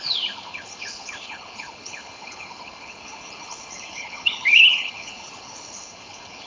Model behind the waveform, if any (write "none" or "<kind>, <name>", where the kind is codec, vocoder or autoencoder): codec, HILCodec